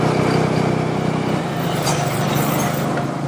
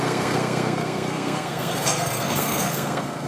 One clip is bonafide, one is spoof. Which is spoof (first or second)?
second